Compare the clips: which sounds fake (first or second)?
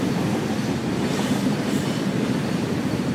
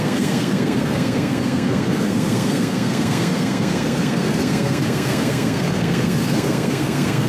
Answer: second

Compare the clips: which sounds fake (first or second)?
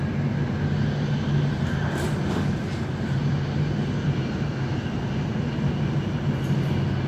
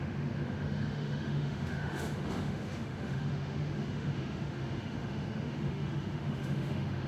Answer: second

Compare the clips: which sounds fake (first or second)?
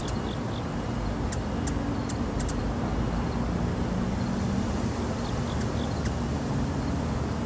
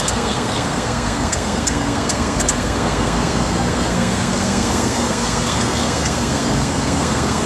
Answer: second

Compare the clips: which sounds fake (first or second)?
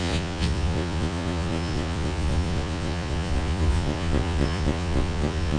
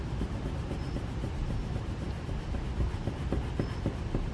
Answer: first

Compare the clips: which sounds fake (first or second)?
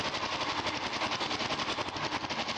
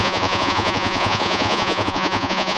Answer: second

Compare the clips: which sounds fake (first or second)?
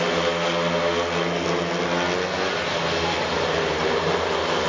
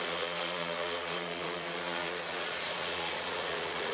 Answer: second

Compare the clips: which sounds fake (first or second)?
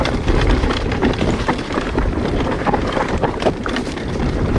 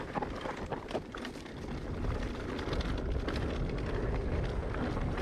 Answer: first